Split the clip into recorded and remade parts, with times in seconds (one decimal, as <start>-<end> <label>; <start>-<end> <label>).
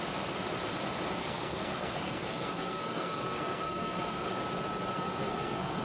0.0-1.2 recorded; 1.2-4.3 remade; 4.3-4.9 recorded; 4.9-5.8 remade